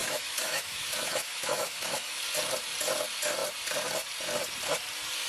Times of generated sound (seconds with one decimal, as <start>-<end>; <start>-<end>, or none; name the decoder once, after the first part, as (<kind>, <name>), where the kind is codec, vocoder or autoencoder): 0.0-2.2 (autoencoder, DAC-VAE)